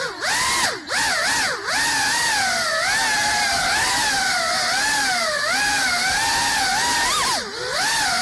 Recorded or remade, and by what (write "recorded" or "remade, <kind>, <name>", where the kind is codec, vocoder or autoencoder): recorded